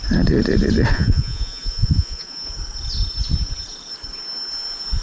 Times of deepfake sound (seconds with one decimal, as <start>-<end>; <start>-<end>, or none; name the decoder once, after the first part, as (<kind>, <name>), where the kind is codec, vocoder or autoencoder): 0.9-2.5 (vocoder, Vocos)